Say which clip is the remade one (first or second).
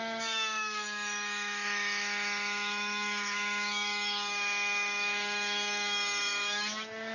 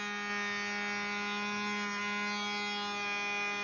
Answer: first